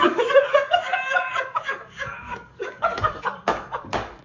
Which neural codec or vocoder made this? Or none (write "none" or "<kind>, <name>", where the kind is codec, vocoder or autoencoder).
codec, DAC